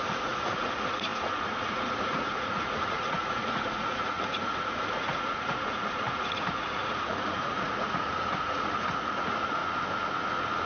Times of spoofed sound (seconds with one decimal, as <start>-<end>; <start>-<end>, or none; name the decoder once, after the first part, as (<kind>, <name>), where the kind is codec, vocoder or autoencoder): 0.0-9.6 (vocoder, Vocos)